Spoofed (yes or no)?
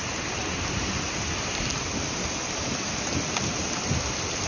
no